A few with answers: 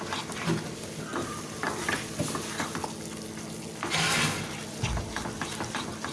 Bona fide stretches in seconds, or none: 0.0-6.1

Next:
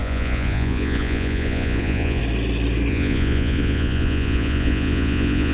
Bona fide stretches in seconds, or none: 2.2-2.9